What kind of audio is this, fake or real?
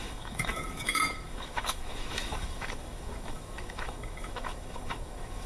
fake